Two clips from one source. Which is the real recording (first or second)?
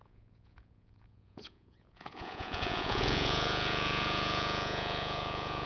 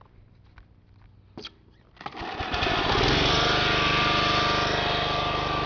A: second